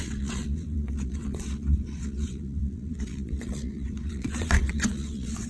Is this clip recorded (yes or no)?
no